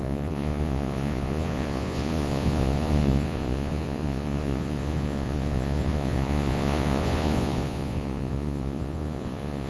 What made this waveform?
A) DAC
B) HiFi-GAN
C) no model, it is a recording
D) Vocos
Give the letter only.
D